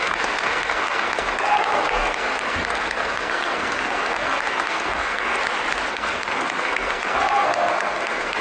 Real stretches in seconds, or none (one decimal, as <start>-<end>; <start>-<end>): 5.4-5.9